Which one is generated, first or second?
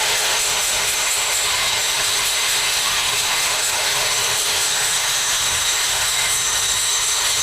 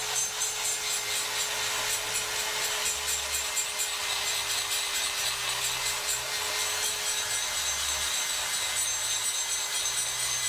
first